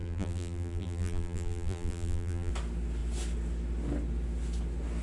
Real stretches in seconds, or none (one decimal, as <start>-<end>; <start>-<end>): 2.5-5.0